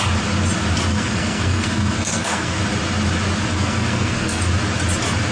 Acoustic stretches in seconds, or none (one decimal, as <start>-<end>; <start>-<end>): 0.0-0.9; 2.6-3.5; 4.4-5.3